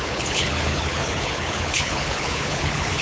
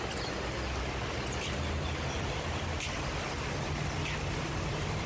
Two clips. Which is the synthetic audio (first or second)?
first